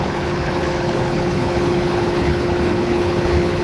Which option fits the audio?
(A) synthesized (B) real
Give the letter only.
A